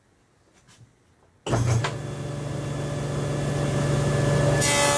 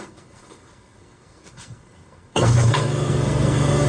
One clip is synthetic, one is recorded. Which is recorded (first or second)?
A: first